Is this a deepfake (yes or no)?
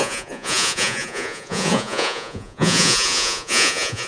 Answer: yes